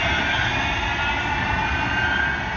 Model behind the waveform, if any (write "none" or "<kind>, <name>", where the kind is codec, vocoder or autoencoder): none